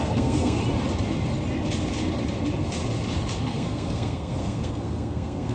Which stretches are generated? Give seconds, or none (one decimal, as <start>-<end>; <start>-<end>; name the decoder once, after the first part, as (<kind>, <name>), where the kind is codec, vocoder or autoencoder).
0.0-0.6 (codec, SNAC); 3.4-5.5